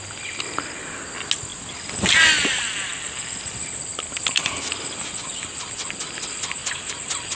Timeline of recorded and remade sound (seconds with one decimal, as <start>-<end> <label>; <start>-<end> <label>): 0.0-7.3 recorded